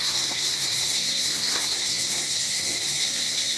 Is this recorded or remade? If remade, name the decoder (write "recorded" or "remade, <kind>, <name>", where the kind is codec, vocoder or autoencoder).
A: remade, codec, SNAC